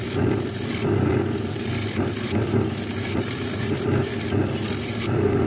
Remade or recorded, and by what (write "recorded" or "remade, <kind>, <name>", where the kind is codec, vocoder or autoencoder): remade, vocoder, BigVGAN v2